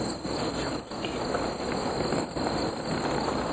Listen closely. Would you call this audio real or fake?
real